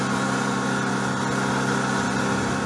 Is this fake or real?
real